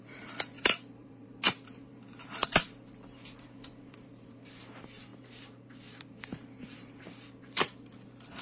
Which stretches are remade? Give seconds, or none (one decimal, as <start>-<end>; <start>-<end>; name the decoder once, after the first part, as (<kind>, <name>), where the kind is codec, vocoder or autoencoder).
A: 0.0-2.4 (vocoder, BigVGAN v2); 3.8-8.4